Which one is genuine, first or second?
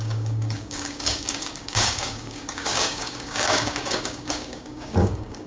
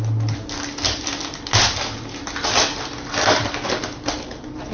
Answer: second